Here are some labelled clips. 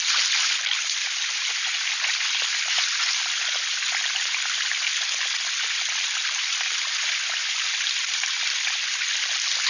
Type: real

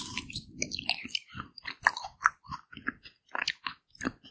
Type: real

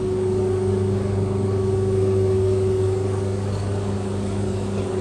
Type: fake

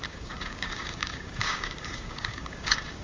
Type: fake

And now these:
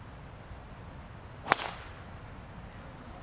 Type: real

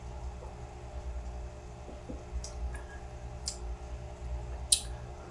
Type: real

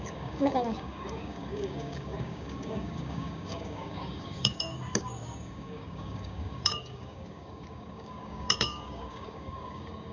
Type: fake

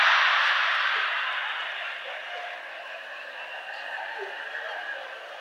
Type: real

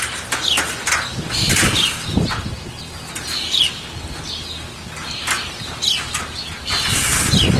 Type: real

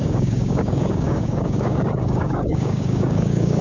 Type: fake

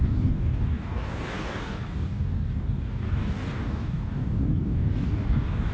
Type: fake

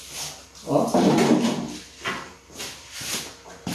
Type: real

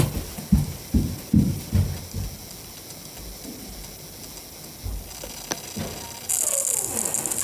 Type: real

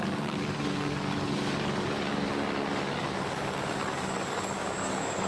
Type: fake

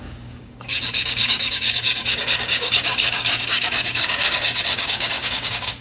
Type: fake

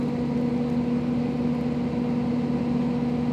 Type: real